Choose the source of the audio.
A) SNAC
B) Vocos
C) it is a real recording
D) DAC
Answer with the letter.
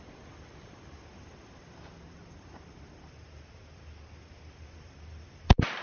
C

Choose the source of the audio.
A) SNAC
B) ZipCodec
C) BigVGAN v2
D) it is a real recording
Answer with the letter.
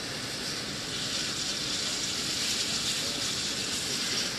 C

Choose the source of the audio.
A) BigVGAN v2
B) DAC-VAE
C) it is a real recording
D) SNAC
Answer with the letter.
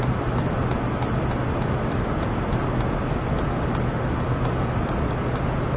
C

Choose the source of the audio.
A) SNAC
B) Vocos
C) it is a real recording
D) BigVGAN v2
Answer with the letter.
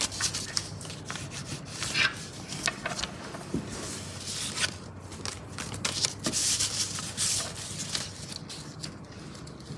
C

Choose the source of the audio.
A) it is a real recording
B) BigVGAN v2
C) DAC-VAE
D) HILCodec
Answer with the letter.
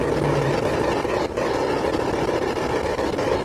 A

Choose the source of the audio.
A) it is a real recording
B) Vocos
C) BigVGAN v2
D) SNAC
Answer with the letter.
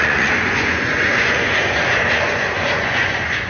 B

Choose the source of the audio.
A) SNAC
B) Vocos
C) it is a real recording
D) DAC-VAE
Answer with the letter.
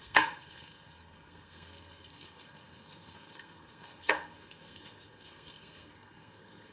A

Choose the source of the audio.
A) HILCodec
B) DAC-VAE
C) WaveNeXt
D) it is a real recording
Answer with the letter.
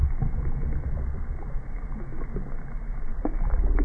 D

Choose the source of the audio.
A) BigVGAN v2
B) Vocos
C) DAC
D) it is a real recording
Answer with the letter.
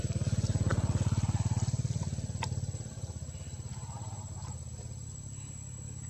D